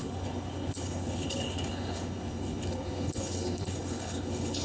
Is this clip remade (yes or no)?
yes